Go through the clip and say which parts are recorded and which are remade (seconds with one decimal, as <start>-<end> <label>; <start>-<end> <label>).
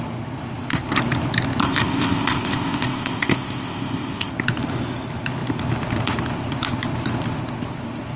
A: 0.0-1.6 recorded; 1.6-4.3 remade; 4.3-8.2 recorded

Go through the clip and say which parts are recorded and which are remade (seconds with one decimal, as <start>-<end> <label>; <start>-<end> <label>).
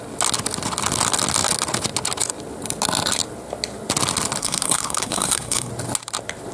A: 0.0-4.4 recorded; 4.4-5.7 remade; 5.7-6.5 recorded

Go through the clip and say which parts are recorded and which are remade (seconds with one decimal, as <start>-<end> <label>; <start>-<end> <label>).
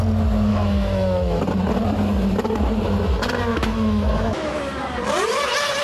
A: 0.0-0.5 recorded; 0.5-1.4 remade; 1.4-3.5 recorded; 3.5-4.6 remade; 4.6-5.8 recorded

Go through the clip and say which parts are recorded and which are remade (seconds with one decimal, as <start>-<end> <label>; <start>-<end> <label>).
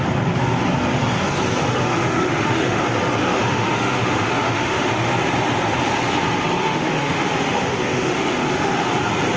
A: 0.0-1.7 recorded; 1.7-2.8 remade; 2.8-3.2 recorded; 3.2-5.1 remade; 5.1-6.6 recorded; 6.6-8.9 remade; 8.9-9.4 recorded